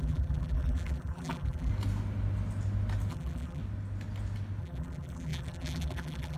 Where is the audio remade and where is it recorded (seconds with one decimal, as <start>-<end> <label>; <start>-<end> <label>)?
0.0-1.7 remade; 1.7-3.1 recorded; 3.1-3.6 remade; 3.6-4.6 recorded; 4.6-6.4 remade